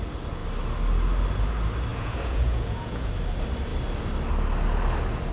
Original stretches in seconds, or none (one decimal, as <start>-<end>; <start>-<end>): 0.0-1.9; 3.1-5.3